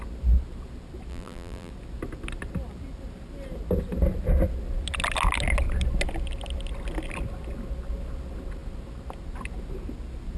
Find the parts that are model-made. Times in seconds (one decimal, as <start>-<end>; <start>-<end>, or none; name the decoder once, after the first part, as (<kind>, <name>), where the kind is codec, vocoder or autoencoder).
1.1-1.7 (vocoder, BigVGAN v2)